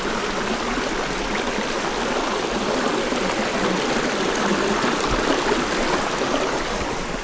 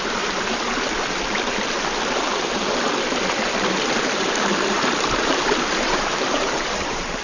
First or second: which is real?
first